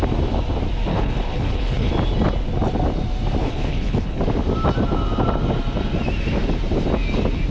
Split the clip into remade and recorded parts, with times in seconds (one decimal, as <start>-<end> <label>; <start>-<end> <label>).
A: 0.0-0.9 recorded; 0.9-1.9 remade; 1.9-3.4 recorded; 3.4-4.2 remade; 4.2-7.5 recorded